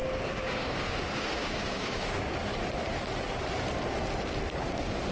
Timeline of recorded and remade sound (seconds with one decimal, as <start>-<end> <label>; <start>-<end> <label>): 0.0-2.4 remade; 2.4-5.1 recorded